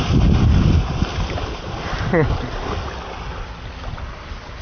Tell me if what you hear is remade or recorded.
recorded